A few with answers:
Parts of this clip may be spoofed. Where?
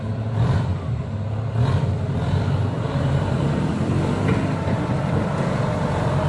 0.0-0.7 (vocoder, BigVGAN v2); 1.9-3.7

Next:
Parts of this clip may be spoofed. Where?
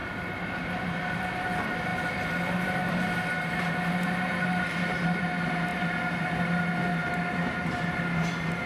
0.0-8.7 (vocoder, BigVGAN v2)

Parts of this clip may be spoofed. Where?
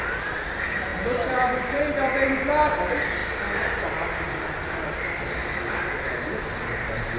0.9-1.8 (vocoder, BigVGAN v2)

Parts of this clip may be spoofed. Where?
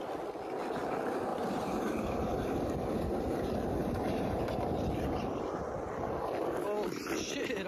1.3-2.3 (vocoder, BigVGAN v2); 3.8-5.5